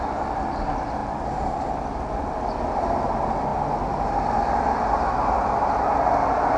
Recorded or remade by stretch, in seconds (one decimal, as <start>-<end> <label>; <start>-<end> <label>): 0.0-6.6 recorded